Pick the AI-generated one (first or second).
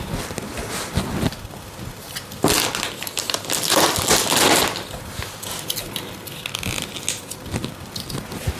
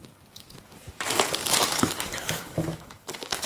second